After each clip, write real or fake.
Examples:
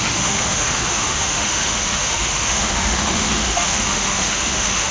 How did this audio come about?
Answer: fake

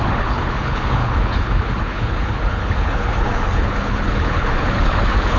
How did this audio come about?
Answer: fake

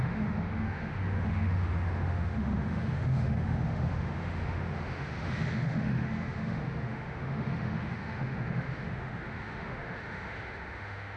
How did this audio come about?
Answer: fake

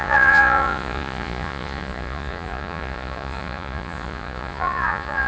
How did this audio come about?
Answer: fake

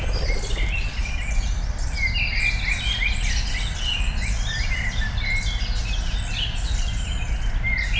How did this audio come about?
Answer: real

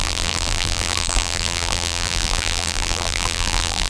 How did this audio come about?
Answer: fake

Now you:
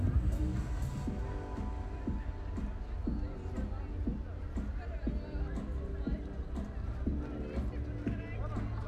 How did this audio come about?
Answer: real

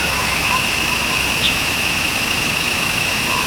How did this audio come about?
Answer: fake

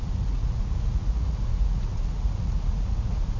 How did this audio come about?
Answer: fake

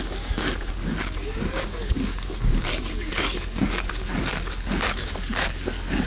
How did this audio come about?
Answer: fake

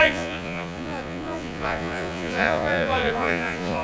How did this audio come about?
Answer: fake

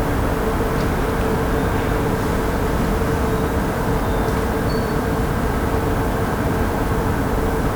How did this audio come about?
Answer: real